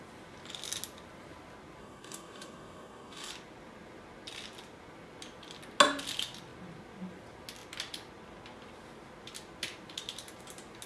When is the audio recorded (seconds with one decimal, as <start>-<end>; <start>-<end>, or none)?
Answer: 0.0-1.8; 3.3-10.9